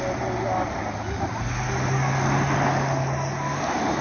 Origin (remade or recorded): recorded